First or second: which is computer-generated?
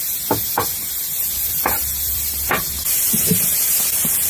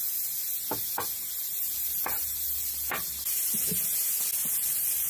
first